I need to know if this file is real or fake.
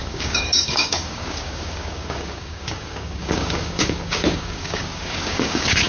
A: fake